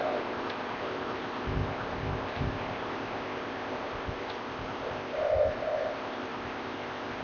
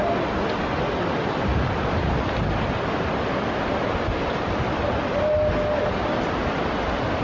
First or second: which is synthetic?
first